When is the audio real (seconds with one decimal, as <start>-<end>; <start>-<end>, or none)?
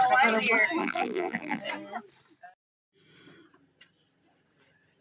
0.0-0.8; 1.6-5.0